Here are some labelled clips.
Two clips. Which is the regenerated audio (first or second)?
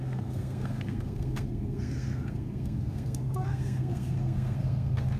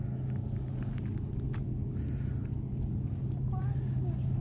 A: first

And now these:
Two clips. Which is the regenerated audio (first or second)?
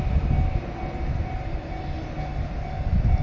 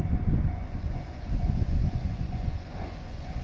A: second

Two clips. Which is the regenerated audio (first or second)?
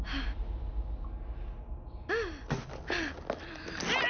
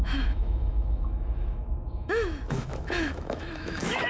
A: second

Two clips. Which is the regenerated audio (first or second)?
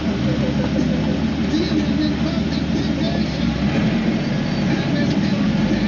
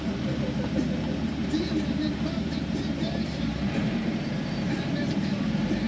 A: second